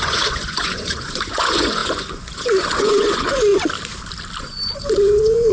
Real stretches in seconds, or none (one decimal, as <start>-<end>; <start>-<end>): 3.5-4.4